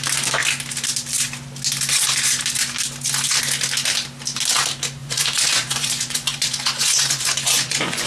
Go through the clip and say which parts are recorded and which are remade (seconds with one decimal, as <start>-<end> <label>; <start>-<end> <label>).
0.0-5.0 recorded; 5.0-8.1 remade